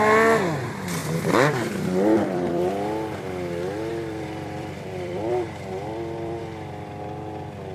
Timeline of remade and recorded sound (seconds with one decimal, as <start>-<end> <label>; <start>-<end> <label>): 0.0-1.0 recorded; 1.0-2.7 remade; 2.7-3.9 recorded; 3.9-6.4 remade; 6.4-7.7 recorded

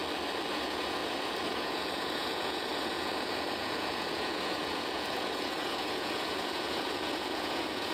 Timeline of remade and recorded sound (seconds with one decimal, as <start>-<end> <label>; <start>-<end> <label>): 0.0-0.5 recorded; 0.5-7.9 remade

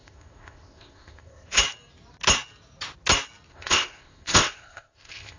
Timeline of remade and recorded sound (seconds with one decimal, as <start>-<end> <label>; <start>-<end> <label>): 0.0-1.6 remade; 1.6-3.5 recorded; 3.5-5.4 remade

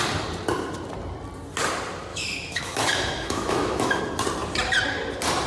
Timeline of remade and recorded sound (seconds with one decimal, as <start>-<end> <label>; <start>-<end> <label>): 0.0-2.1 recorded; 2.1-4.0 remade; 4.0-5.5 recorded